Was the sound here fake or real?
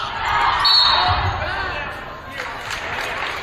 real